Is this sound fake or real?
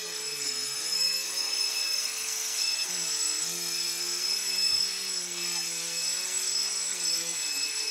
fake